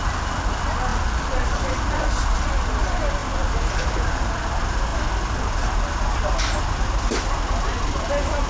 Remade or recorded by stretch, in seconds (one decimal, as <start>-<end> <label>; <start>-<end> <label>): 0.0-8.5 recorded